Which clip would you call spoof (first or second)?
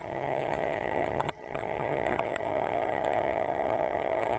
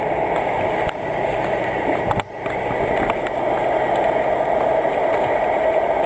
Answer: first